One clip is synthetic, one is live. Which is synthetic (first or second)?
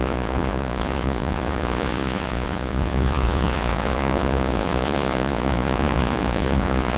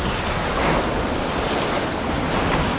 first